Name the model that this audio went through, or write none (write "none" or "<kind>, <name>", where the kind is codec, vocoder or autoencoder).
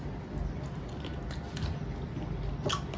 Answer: none